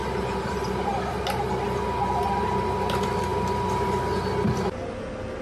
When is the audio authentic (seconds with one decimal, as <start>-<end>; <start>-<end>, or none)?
1.0-5.4